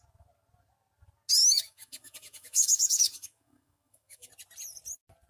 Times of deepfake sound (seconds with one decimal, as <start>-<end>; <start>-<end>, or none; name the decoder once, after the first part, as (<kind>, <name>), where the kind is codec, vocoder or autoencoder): 1.4-4.3 (autoencoder, DAC-VAE)

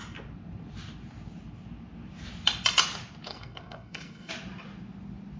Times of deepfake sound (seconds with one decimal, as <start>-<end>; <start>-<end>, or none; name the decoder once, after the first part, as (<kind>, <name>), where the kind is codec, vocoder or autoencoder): 3.3-4.3 (codec, SNAC)

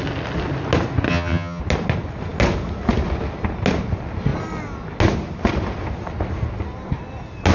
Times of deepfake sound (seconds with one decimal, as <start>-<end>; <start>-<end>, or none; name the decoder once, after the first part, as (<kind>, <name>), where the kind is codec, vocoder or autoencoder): 1.1-1.6 (vocoder, HiFi-GAN)

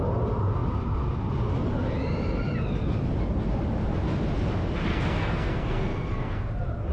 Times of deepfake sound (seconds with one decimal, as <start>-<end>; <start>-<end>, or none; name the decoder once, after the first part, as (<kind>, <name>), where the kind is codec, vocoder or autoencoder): 4.9-6.5 (codec, SNAC)

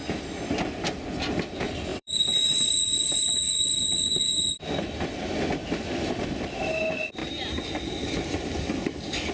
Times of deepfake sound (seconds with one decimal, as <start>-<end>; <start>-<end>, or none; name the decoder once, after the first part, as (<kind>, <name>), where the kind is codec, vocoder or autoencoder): 1.9-2.8 (vocoder, BigVGAN v2); 7.2-9.3

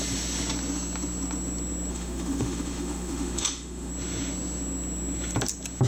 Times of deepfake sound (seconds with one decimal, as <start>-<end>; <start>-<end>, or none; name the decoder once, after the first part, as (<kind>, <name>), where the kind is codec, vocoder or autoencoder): 1.9-3.9 (autoencoder, DAC-VAE)

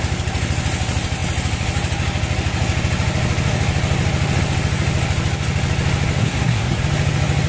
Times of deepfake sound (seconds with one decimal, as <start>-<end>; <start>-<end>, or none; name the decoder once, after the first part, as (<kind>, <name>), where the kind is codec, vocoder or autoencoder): 6.2-6.8 (codec, SNAC)